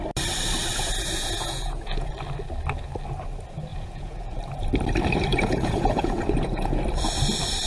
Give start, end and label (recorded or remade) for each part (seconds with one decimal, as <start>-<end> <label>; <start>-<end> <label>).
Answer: 0.0-0.7 recorded; 0.7-2.1 remade; 2.1-3.7 recorded; 3.7-4.4 remade; 4.4-5.3 recorded; 5.3-6.8 remade; 6.8-7.7 recorded